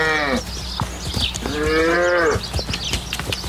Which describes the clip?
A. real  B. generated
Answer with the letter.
A